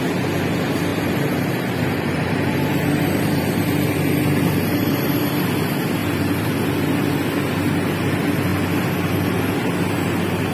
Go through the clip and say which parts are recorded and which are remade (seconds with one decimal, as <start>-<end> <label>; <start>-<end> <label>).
0.0-0.9 recorded; 0.9-5.2 remade; 5.2-6.0 recorded; 6.0-6.7 remade; 6.7-10.5 recorded